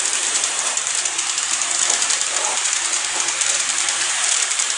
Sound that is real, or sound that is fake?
fake